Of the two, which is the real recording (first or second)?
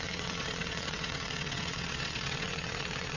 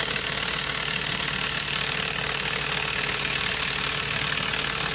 second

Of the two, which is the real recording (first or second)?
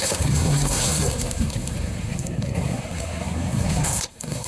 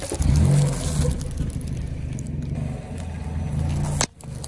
second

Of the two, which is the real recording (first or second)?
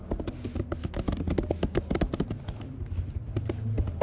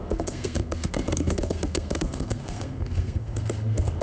first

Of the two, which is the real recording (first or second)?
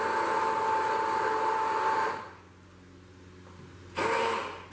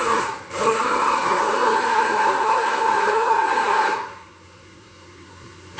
first